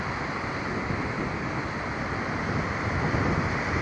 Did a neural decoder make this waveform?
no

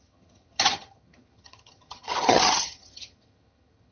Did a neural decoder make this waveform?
yes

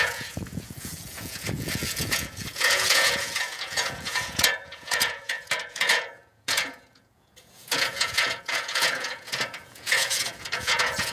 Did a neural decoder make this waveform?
yes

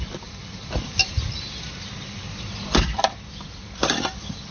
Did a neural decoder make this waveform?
no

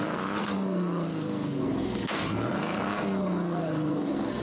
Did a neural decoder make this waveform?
yes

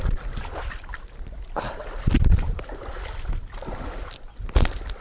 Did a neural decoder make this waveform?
no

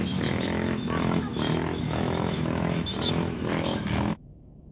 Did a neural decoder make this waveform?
yes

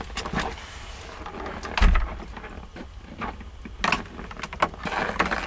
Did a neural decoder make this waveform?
no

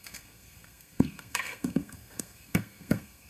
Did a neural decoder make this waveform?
yes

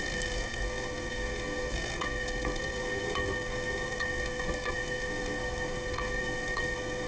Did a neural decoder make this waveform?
yes